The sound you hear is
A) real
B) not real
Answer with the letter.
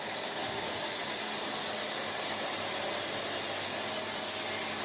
A